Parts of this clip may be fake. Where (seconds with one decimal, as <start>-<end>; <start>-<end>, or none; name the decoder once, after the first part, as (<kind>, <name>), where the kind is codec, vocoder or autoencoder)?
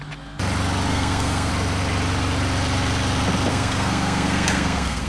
0.9-1.5 (codec, SNAC); 3.5-5.1